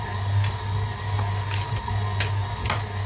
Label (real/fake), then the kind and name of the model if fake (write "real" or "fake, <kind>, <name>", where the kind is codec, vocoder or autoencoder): real